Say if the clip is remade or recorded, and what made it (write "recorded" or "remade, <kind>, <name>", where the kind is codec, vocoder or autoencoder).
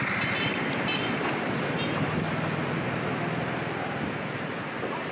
recorded